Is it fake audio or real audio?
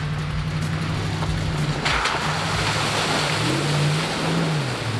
real